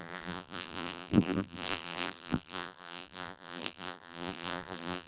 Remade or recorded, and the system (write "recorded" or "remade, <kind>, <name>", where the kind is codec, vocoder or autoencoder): remade, vocoder, BigVGAN v2